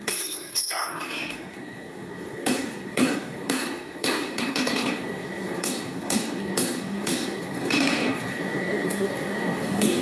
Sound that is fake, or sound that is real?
fake